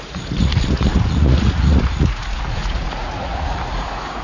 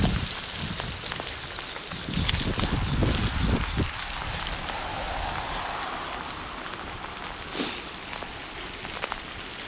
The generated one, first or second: first